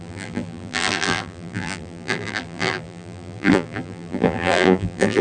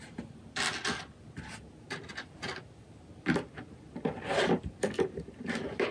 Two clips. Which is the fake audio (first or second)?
first